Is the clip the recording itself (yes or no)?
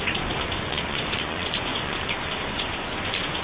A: no